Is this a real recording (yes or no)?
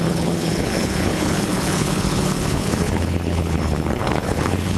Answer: no